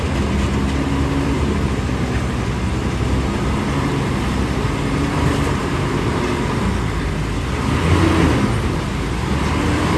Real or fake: real